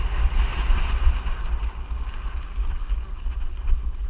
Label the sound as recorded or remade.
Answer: recorded